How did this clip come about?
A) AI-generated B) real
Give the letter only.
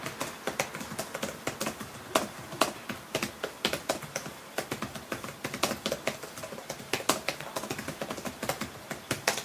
B